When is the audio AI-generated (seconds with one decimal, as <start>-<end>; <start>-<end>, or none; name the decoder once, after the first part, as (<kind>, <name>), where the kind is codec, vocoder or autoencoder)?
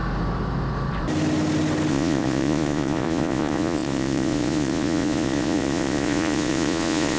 1.9-7.2 (vocoder, Vocos)